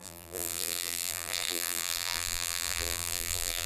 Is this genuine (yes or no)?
no